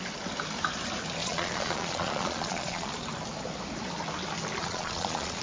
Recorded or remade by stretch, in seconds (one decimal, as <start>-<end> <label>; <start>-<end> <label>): 0.0-1.2 recorded; 1.2-2.9 remade; 2.9-4.6 recorded; 4.6-5.4 remade